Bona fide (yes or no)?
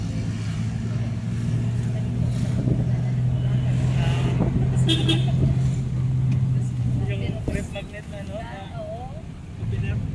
yes